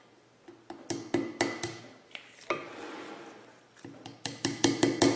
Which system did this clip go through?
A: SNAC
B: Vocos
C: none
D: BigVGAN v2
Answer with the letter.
C